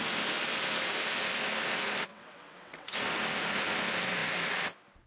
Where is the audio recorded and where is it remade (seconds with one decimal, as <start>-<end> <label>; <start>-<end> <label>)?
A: 0.0-2.1 recorded; 2.1-3.0 remade; 3.0-5.1 recorded